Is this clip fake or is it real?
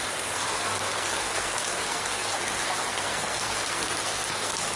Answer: fake